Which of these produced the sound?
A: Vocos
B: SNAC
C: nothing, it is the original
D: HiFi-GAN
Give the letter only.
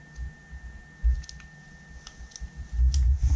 C